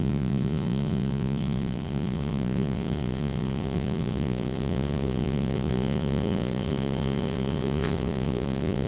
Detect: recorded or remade remade